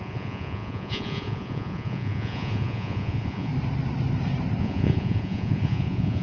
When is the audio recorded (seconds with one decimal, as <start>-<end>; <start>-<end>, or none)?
3.5-4.6